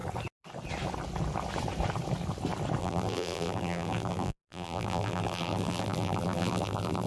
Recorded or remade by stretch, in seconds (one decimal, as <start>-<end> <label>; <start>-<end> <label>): 0.0-2.8 recorded; 2.8-7.1 remade